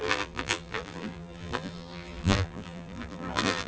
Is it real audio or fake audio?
fake